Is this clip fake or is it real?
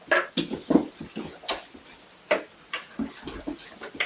real